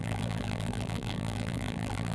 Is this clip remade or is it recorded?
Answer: remade